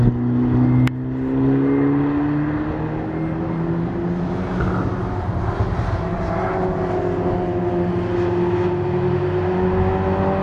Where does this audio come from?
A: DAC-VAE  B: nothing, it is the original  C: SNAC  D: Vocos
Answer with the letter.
B